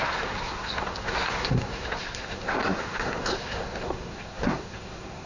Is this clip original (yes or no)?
no